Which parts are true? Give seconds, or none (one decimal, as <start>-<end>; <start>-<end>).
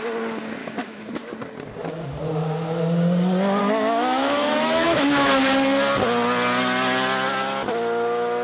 0.0-0.6; 1.1-3.6; 5.3-8.4